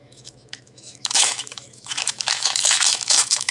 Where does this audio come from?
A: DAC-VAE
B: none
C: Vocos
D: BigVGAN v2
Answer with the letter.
A